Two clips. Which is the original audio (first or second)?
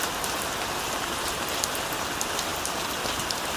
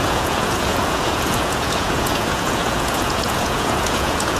first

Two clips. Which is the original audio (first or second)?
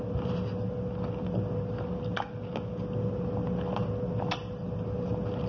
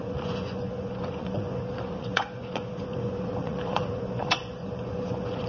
first